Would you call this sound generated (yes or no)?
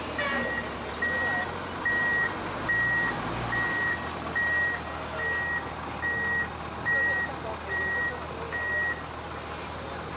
no